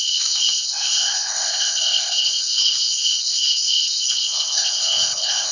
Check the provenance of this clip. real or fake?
fake